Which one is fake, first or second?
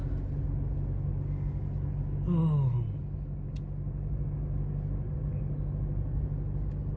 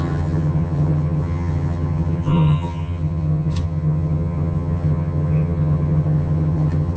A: second